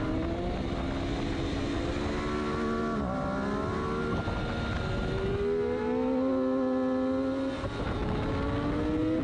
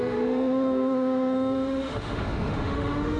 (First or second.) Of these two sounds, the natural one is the first